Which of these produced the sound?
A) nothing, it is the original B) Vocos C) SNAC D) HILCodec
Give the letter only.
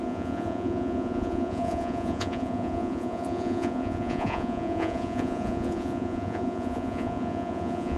B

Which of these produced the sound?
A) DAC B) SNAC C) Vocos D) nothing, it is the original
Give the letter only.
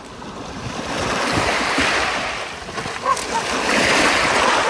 D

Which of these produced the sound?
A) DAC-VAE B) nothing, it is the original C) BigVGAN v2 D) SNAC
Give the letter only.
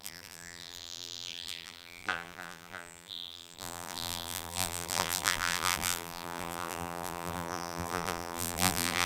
C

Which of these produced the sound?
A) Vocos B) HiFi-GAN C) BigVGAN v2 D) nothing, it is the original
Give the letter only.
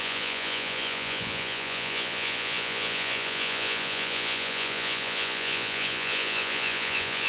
A